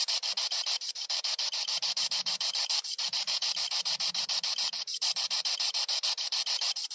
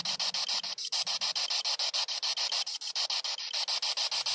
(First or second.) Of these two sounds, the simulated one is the first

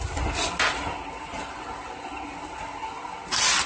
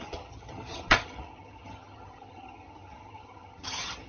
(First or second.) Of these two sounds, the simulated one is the second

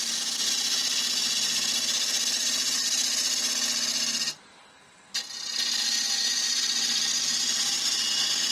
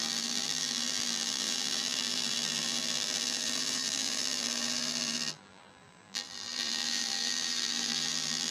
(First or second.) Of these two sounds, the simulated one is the second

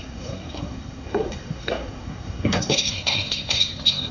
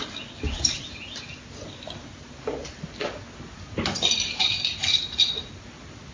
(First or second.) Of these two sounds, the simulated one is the first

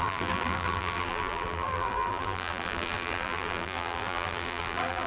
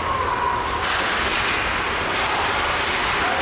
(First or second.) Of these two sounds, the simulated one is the first